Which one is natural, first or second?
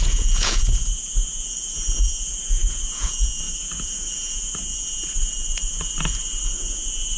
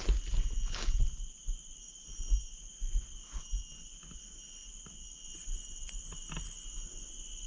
second